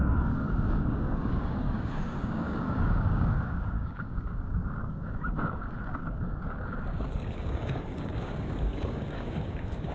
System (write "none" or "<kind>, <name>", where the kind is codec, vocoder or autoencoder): codec, DAC